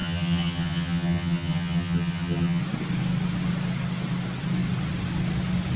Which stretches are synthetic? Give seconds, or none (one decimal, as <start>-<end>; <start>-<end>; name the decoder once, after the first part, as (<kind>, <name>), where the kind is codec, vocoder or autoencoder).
0.0-2.6 (vocoder, HiFi-GAN)